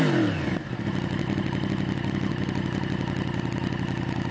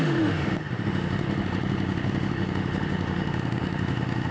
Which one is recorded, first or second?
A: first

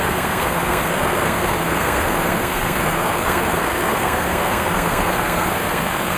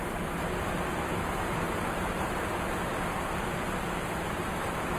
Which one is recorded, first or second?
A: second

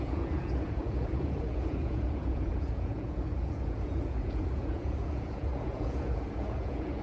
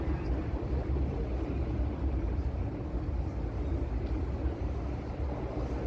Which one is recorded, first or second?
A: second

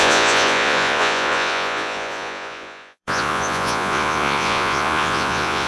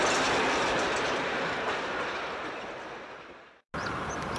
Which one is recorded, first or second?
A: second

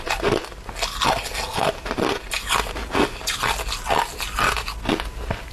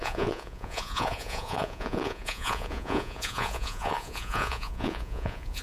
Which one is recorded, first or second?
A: first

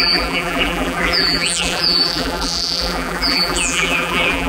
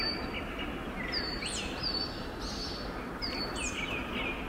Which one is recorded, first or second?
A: second